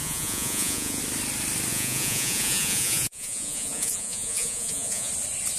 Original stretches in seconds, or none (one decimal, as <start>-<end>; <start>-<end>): 1.0-1.7; 5.1-5.6

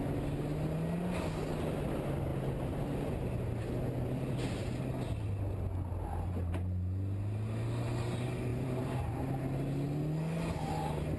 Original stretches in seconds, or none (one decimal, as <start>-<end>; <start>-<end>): 0.0-8.5; 9.4-11.2

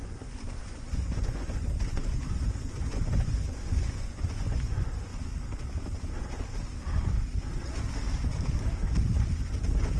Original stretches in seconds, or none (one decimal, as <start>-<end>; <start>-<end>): 5.1-9.5

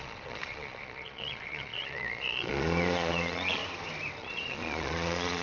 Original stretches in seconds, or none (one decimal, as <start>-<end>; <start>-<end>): 3.6-4.2

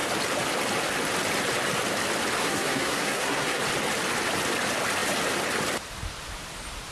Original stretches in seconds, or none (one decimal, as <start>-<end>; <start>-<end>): 0.0-2.4; 3.6-6.9

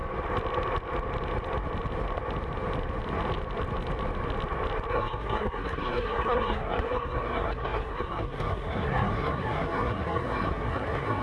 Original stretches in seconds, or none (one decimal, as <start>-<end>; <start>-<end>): 0.0-4.9

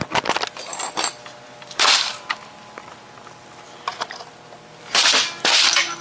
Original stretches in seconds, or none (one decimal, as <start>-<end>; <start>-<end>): 0.0-0.7; 2.3-6.0